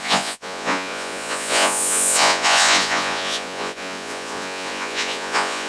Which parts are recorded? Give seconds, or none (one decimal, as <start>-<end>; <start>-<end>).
none